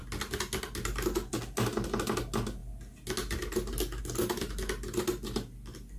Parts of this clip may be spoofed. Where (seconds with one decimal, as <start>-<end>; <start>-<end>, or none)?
none